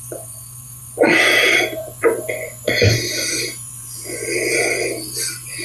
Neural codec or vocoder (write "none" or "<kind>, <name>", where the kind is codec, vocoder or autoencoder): vocoder, Vocos